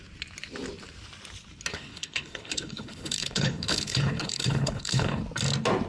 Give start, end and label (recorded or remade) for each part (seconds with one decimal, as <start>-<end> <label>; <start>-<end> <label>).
0.0-1.7 recorded; 1.7-5.2 remade; 5.2-5.9 recorded